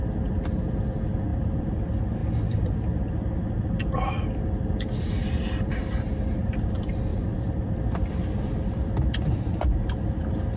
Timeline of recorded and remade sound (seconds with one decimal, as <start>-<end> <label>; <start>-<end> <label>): 0.0-1.3 recorded; 1.3-1.8 remade; 1.8-2.2 recorded; 2.2-2.7 remade; 2.7-5.2 recorded; 5.2-5.8 remade; 5.8-7.1 recorded; 7.1-9.4 remade; 9.4-10.6 recorded